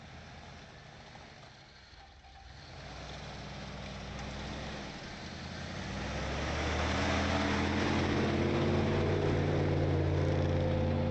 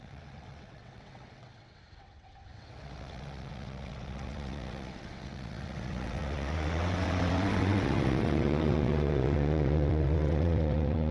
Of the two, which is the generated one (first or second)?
second